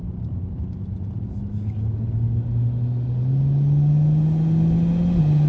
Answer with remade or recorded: recorded